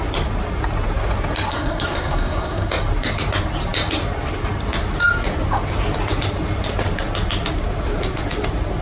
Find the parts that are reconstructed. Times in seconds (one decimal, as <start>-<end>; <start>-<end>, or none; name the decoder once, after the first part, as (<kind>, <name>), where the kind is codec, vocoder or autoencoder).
1.5-2.7 (codec, SNAC)